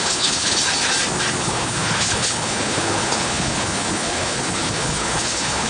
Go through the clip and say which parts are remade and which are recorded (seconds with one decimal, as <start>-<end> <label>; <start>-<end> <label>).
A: 0.0-0.6 remade; 0.6-1.4 recorded; 1.4-5.7 remade